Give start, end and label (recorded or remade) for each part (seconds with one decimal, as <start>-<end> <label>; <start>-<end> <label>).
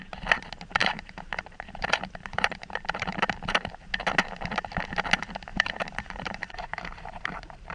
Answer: 0.0-0.8 recorded; 0.8-3.7 remade; 3.7-5.5 recorded; 5.5-7.7 remade